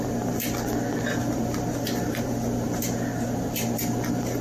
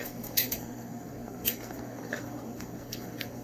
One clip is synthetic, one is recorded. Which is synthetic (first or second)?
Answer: second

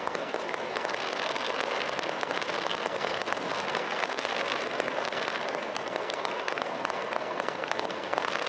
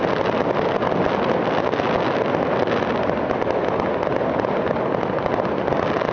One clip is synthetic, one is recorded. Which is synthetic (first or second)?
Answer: first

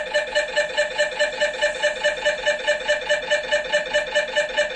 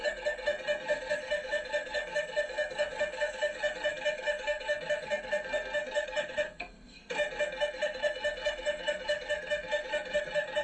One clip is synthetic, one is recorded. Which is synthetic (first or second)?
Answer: second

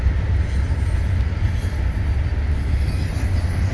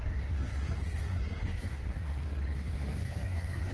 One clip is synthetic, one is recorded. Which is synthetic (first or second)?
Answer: second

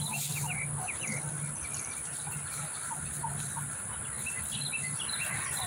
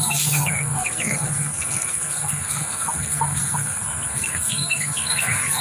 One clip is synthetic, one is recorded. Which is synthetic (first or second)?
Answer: second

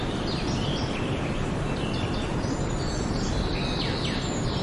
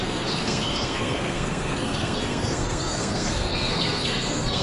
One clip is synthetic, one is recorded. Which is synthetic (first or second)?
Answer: second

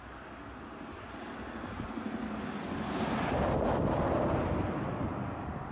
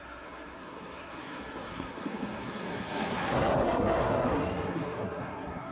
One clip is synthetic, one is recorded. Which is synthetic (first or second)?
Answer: second